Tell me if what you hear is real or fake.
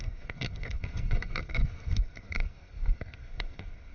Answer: fake